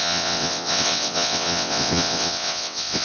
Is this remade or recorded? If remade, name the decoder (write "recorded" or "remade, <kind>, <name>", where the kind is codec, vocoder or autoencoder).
remade, vocoder, WaveNeXt